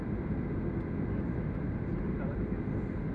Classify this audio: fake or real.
real